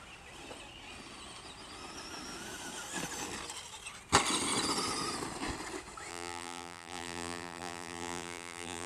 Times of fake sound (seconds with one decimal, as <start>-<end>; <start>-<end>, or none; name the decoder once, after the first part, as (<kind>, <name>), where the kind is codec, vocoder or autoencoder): 6.1-8.9 (vocoder, BigVGAN v2)